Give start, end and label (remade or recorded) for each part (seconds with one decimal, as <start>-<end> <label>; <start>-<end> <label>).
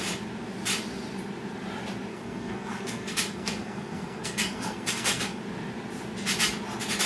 0.0-2.1 recorded; 2.1-5.4 remade; 5.4-7.1 recorded